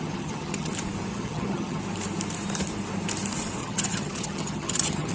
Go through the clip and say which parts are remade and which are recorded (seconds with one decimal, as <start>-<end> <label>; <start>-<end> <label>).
0.0-0.7 remade; 0.7-1.1 recorded; 1.1-1.8 remade; 1.8-3.6 recorded; 3.6-5.1 remade